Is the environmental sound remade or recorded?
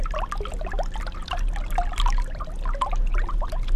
recorded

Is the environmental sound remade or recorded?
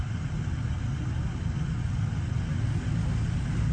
recorded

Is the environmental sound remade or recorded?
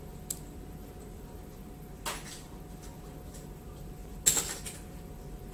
recorded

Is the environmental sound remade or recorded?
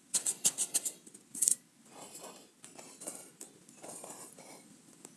recorded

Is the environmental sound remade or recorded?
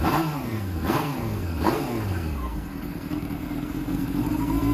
remade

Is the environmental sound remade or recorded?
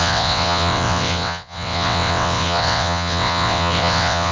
remade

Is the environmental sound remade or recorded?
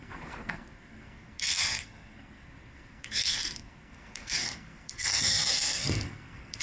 remade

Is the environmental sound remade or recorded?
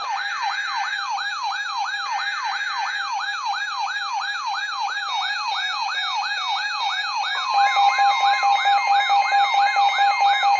recorded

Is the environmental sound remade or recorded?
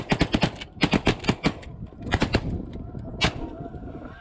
recorded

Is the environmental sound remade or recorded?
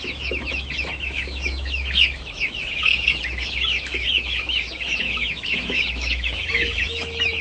remade